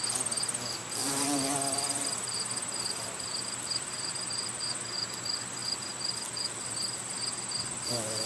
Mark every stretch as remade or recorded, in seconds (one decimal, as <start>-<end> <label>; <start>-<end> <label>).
0.0-1.0 recorded; 1.0-4.6 remade; 4.6-8.3 recorded